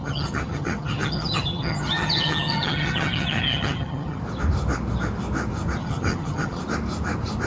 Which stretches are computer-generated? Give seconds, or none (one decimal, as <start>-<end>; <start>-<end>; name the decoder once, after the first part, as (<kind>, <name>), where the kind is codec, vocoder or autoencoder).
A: 0.0-4.2 (vocoder, HiFi-GAN); 5.8-6.6